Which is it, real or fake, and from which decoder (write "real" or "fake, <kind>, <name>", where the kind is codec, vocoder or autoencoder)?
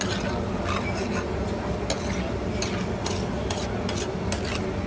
real